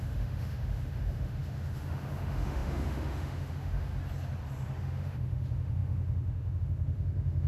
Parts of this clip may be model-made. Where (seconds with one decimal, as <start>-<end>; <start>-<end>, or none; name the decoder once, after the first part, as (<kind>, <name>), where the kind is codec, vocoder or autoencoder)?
0.0-3.9 (autoencoder, DAC-VAE); 4.8-7.5